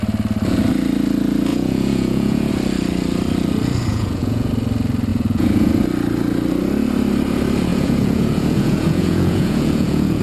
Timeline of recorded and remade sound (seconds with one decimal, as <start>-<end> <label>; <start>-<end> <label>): 0.0-1.5 recorded; 1.5-2.5 remade; 2.5-3.9 recorded; 3.9-4.5 remade; 4.5-5.1 recorded; 5.1-5.7 remade; 5.7-7.7 recorded; 7.7-10.2 remade